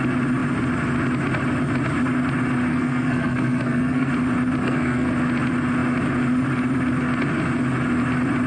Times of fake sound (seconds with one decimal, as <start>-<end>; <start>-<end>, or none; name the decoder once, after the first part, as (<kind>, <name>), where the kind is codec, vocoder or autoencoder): 2.7-4.1 (codec, SNAC); 4.6-5.1